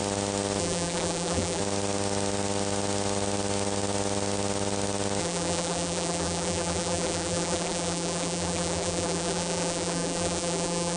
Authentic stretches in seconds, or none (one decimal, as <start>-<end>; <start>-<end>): 0.0-0.6; 1.6-5.2